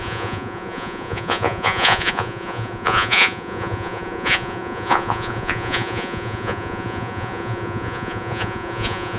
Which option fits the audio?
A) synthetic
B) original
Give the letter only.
A